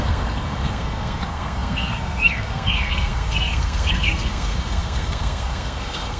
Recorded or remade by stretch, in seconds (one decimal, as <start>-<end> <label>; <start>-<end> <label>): 0.0-6.2 remade